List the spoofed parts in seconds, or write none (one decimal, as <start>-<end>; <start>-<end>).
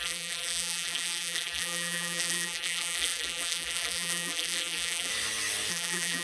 0.0-5.1; 5.7-6.2